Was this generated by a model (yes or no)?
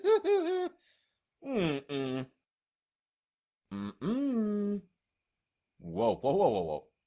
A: no